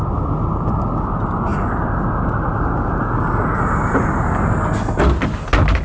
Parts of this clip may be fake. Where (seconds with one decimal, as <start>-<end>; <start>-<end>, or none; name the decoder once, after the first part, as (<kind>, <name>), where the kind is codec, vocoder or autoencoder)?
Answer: none